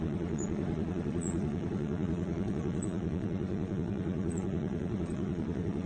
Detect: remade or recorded remade